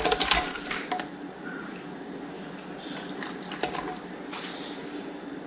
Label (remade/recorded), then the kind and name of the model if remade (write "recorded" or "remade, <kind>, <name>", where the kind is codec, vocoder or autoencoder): recorded